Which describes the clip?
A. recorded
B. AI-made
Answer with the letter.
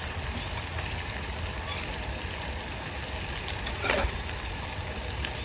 A